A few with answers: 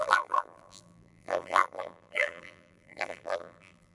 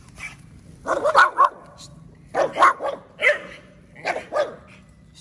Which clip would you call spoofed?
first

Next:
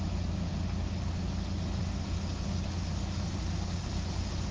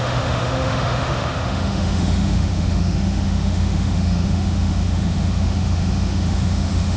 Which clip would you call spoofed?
second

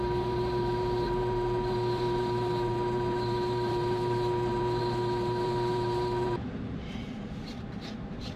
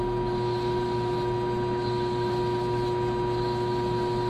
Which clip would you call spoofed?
first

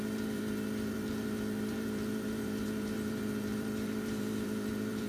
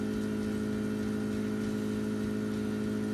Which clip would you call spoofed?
first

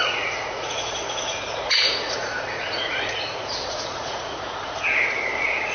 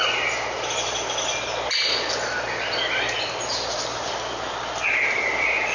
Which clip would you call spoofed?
first